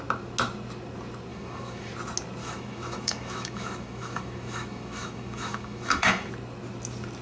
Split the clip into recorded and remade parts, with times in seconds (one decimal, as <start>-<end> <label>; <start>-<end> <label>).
0.0-1.3 recorded; 1.3-1.9 remade; 1.9-2.4 recorded; 2.4-6.3 remade; 6.3-7.2 recorded